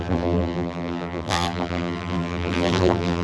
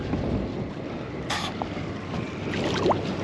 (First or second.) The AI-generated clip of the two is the first